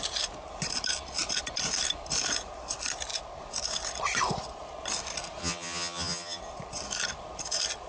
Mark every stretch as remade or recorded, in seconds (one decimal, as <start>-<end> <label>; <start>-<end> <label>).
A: 0.0-5.4 recorded; 5.4-6.4 remade; 6.4-7.9 recorded